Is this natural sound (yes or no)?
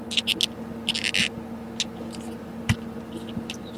yes